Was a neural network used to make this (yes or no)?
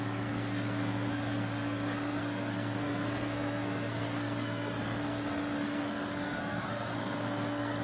yes